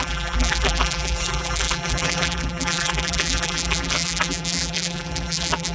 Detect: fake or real fake